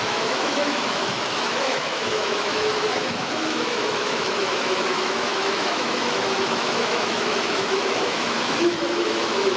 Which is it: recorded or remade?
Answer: remade